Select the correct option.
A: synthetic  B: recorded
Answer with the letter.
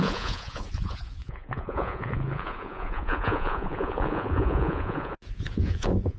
A